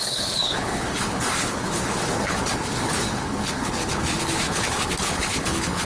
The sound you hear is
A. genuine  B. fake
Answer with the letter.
B